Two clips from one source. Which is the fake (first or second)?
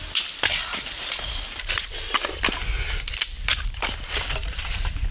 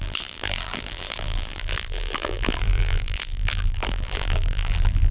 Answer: second